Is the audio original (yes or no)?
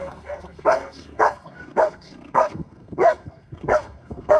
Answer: no